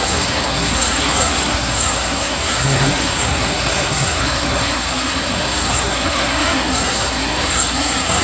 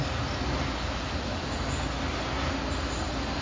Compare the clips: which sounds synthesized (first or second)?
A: first